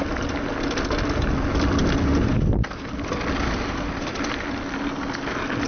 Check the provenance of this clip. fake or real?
real